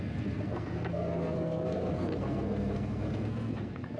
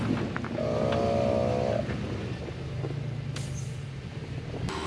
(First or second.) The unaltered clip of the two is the second